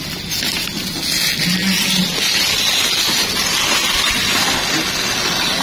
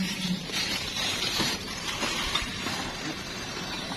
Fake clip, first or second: second